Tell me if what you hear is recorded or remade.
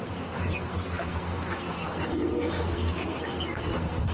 remade